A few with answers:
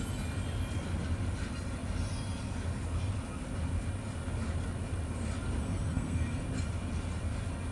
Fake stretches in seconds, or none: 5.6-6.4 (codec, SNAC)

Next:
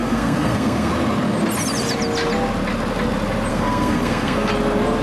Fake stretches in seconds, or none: 0.0-0.9 (codec, SNAC); 3.5-4.5

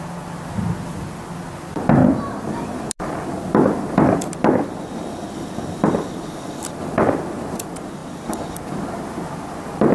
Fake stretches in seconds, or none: none

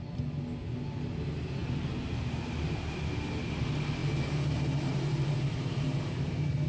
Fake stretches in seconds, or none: none

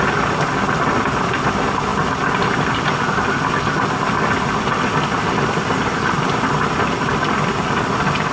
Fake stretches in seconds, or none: none